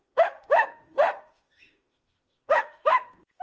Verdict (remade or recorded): remade